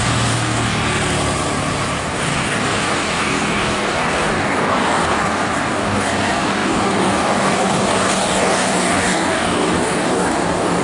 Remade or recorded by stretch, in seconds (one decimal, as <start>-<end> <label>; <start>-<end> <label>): 0.0-0.8 remade; 0.8-2.0 recorded; 2.0-10.8 remade